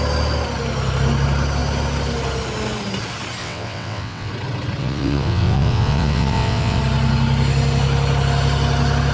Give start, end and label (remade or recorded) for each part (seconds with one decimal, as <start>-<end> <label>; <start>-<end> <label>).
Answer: 0.0-3.4 recorded; 3.4-4.3 remade; 4.3-4.8 recorded; 4.8-6.8 remade; 6.8-9.1 recorded